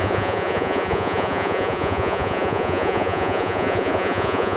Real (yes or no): no